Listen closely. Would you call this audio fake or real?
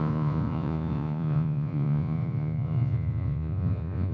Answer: fake